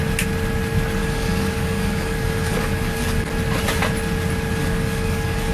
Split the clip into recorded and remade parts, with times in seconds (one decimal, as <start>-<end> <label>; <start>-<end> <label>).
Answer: 0.0-1.0 recorded; 1.0-3.3 remade; 3.3-4.6 recorded; 4.6-5.5 remade